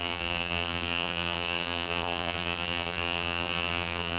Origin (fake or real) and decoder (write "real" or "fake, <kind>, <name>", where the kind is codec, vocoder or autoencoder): fake, vocoder, BigVGAN v2